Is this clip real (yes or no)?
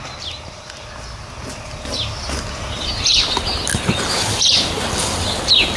yes